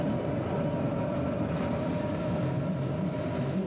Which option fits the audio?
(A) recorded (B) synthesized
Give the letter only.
A